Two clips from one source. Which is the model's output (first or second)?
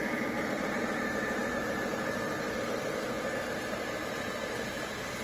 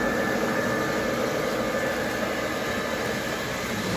first